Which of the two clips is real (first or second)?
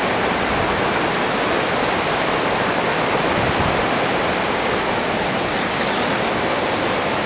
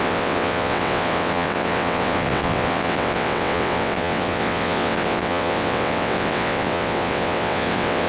first